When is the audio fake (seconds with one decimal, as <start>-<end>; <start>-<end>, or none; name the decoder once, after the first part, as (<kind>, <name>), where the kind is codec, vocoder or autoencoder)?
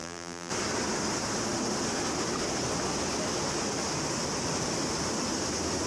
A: 0.0-0.5 (vocoder, BigVGAN v2)